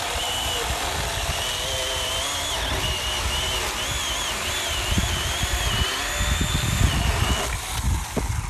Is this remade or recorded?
recorded